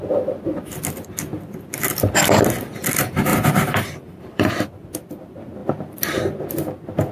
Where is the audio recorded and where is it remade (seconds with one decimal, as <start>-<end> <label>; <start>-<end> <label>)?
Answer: 0.0-3.3 recorded; 3.3-4.5 remade; 4.5-7.1 recorded